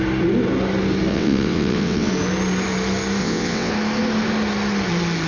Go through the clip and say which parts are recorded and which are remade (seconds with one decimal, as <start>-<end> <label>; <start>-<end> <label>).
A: 0.0-1.1 recorded; 1.1-2.1 remade; 2.1-3.2 recorded; 3.2-3.7 remade; 3.7-5.3 recorded